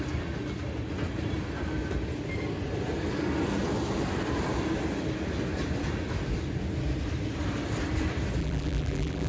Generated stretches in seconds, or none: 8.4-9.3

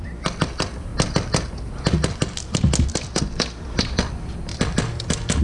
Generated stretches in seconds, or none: 0.0-0.9; 4.1-4.5